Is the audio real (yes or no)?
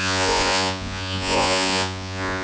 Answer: no